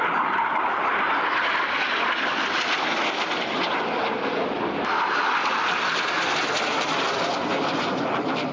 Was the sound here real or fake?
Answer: real